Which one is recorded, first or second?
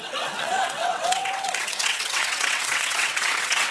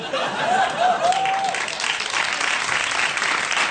second